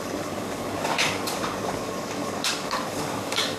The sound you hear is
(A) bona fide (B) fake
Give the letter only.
B